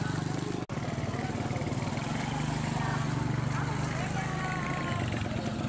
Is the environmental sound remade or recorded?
recorded